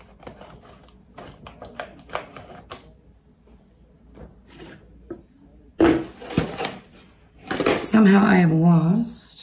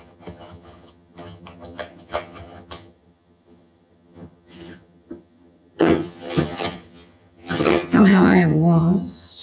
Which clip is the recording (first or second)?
first